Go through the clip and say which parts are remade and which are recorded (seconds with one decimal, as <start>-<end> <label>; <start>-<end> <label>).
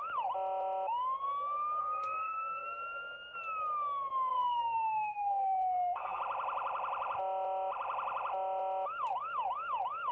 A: 0.0-1.8 recorded; 1.8-2.8 remade; 2.8-4.3 recorded; 4.3-6.2 remade; 6.2-10.1 recorded